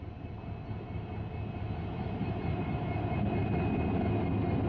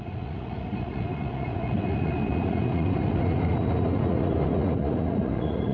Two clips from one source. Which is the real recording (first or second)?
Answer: first